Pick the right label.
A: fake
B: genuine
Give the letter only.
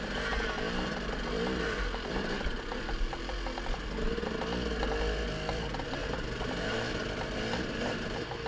B